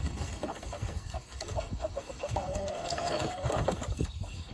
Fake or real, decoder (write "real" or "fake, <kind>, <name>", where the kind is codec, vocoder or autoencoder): fake, codec, SNAC